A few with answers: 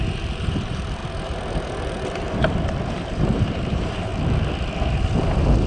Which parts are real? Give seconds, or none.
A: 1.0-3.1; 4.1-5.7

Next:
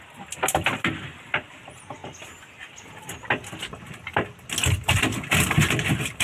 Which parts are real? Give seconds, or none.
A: 0.0-6.2

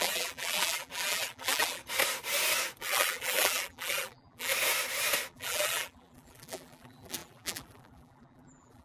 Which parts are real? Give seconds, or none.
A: 1.8-2.8; 4.5-5.3

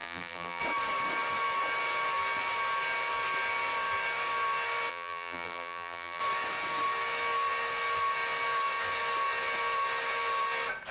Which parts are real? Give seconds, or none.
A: 0.6-4.9; 6.2-10.9

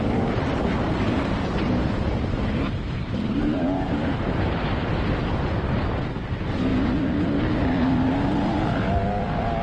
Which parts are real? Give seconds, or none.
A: 0.0-0.8; 5.0-9.6

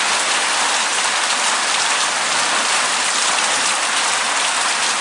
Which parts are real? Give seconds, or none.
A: 0.0-0.9; 3.2-5.0

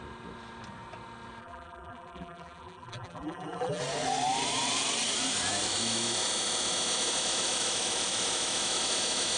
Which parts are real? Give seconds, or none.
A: 0.0-1.4; 3.8-9.4

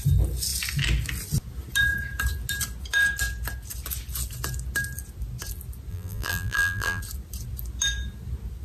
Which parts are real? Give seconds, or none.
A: 0.0-5.9; 7.0-8.6